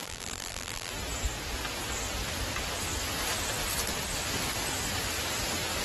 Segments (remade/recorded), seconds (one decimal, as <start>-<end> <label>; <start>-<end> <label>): 0.0-0.9 remade; 0.9-5.8 recorded